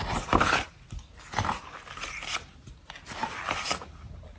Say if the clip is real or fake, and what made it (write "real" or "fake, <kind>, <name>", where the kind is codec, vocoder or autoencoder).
real